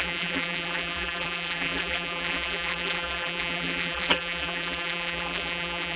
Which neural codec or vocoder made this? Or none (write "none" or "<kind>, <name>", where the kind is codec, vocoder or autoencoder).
vocoder, BigVGAN v2